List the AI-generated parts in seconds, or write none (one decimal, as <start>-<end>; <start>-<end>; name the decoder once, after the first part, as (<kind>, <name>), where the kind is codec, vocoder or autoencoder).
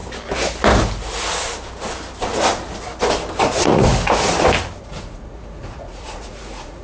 3.4-3.9 (vocoder, Vocos); 4.8-6.8